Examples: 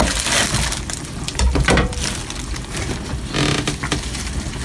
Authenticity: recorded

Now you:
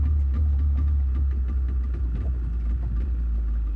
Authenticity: recorded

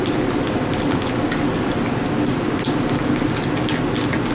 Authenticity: recorded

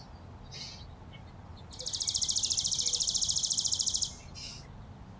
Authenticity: recorded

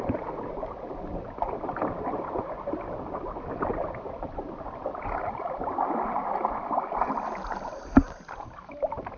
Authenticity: recorded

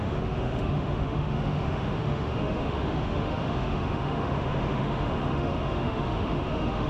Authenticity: remade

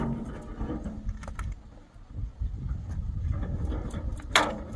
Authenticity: recorded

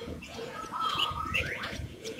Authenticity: remade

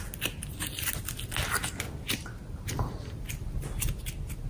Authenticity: recorded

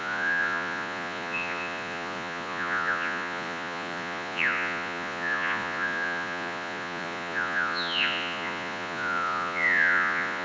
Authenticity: remade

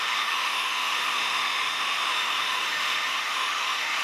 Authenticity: remade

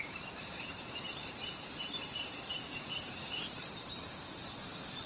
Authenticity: remade